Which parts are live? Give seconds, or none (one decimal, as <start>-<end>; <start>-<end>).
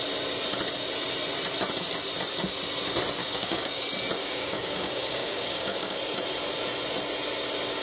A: 0.0-3.2; 3.8-4.2; 6.0-7.8